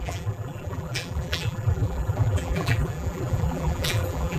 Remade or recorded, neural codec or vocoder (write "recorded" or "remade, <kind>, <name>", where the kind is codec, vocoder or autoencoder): remade, vocoder, BigVGAN v2